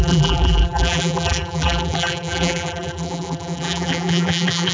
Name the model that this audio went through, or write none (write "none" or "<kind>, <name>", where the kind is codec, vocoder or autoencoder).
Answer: vocoder, BigVGAN v2